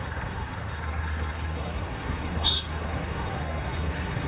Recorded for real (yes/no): no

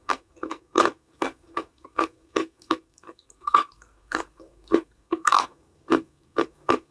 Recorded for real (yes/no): no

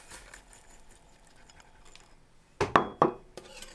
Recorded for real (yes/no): yes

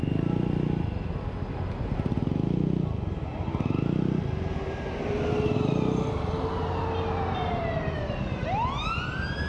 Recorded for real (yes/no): yes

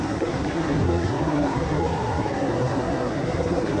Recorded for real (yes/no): no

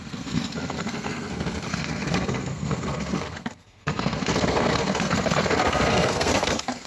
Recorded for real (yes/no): no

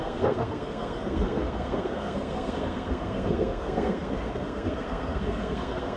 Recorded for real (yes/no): no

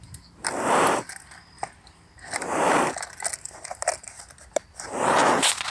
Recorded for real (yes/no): yes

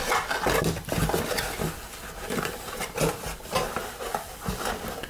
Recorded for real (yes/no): yes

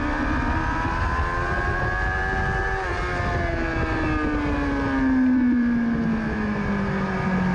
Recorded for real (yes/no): yes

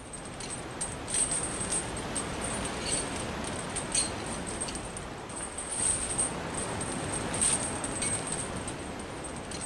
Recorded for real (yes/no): yes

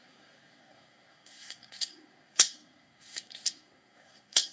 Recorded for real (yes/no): no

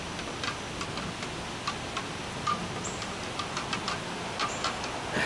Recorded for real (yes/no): yes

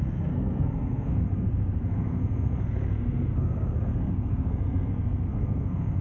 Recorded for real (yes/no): no